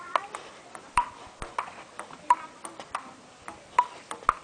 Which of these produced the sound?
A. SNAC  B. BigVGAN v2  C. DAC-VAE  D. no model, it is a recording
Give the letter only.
D